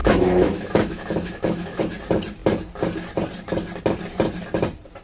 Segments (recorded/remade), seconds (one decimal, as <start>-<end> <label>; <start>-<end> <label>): 0.0-1.8 remade; 1.8-5.0 recorded